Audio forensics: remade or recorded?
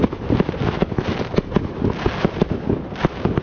recorded